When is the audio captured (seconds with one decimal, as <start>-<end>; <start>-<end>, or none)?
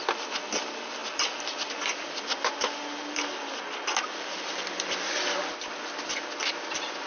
0.0-7.1